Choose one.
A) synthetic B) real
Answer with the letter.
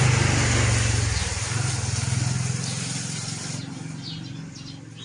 B